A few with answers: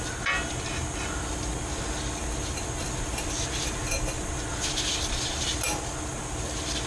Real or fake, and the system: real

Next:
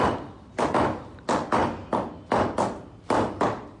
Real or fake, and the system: real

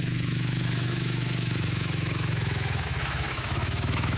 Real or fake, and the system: fake, autoencoder, DAC-VAE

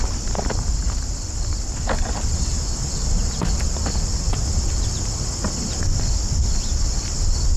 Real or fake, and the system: real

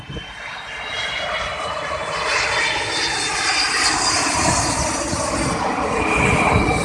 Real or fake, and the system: real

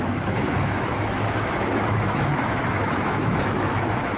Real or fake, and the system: fake, autoencoder, DAC-VAE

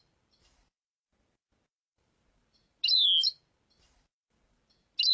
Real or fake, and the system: real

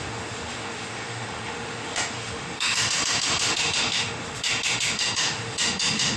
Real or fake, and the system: fake, autoencoder, DAC-VAE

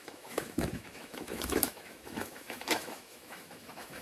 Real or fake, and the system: fake, autoencoder, DAC-VAE